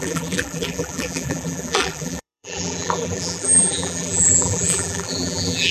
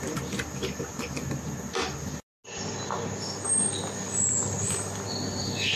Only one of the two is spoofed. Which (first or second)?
first